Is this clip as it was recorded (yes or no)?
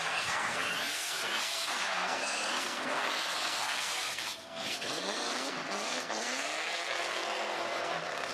no